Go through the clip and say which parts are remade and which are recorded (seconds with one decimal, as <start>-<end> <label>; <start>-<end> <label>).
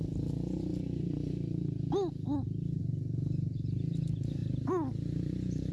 0.0-5.7 recorded